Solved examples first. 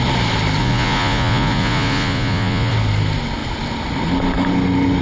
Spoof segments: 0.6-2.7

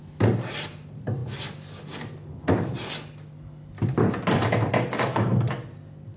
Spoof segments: none